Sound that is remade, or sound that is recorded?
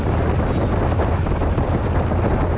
recorded